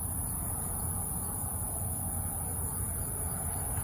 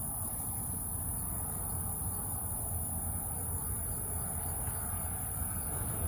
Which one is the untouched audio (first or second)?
second